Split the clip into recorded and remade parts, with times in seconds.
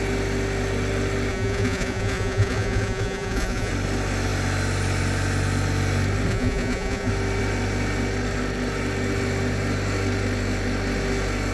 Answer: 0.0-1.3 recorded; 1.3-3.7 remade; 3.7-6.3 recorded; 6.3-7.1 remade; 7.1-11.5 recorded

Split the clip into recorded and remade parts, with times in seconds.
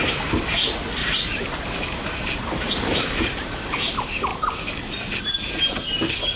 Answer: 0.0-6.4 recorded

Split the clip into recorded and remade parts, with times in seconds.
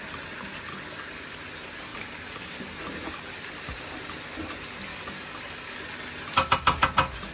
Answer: 0.0-0.7 recorded; 0.7-1.4 remade; 1.4-1.9 recorded; 1.9-2.5 remade; 2.5-4.9 recorded; 4.9-5.8 remade; 5.8-7.3 recorded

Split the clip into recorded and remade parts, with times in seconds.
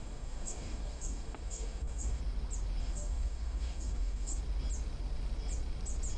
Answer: 0.0-2.2 remade; 2.2-2.8 recorded; 2.8-4.4 remade; 4.4-6.2 recorded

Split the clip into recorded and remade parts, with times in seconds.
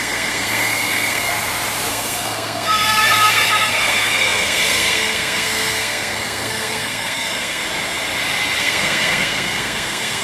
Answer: 0.0-1.3 remade; 1.3-1.9 recorded; 1.9-7.6 remade; 7.6-8.6 recorded; 8.6-10.2 remade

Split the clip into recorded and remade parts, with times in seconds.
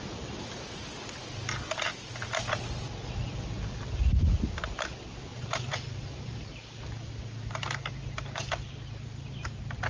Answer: 0.0-5.3 recorded; 5.3-6.4 remade; 6.4-9.9 recorded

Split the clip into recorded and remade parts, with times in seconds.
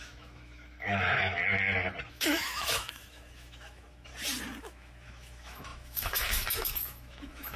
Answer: 0.0-1.4 remade; 1.4-2.1 recorded; 2.1-4.1 remade; 4.1-4.6 recorded; 4.6-7.6 remade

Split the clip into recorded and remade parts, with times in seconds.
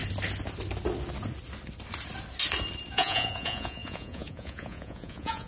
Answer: 0.0-2.9 recorded; 2.9-5.5 remade